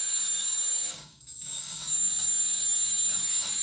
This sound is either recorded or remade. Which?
remade